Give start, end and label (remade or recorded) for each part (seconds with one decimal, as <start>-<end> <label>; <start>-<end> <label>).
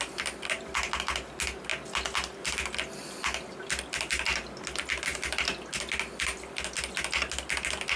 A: 0.0-8.0 recorded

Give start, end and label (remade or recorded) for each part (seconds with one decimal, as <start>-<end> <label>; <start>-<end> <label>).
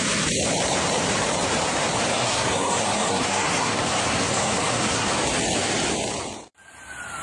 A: 0.0-2.1 recorded; 2.1-5.1 remade; 5.1-7.2 recorded